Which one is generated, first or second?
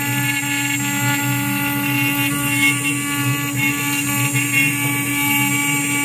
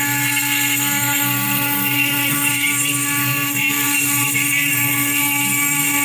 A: second